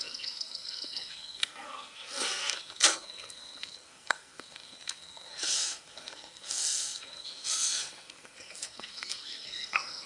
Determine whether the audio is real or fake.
fake